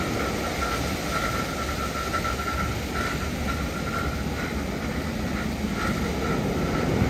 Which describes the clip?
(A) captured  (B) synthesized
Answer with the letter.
A